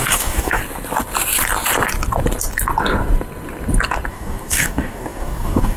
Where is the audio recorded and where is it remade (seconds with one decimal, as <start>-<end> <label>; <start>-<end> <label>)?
0.0-0.6 remade; 0.6-4.1 recorded; 4.1-5.8 remade